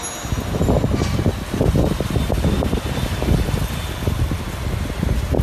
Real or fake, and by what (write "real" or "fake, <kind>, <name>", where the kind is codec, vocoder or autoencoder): real